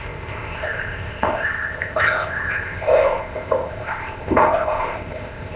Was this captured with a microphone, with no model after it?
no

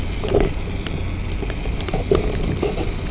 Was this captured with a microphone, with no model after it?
yes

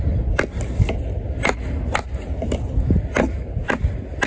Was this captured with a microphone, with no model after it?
yes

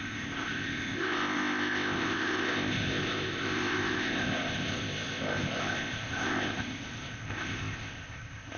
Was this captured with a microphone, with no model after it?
no